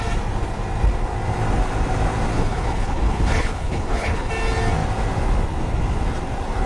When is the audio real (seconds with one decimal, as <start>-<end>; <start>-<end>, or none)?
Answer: 0.0-2.3; 4.3-6.7